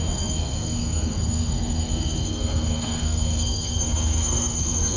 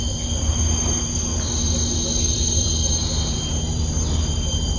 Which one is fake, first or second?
first